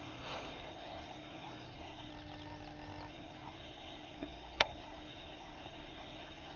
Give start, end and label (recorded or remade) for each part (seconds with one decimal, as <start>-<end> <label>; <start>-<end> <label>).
0.0-2.1 remade; 2.1-3.1 recorded; 3.1-6.6 remade